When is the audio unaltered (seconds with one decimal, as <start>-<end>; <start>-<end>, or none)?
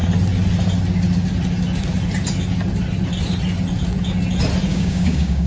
0.0-4.7